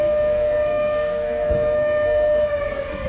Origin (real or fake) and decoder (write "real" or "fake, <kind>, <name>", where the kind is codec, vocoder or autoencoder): fake, codec, SNAC